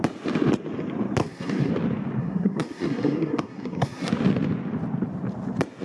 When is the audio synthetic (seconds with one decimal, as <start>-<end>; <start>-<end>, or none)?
1.2-1.7; 2.2-4.1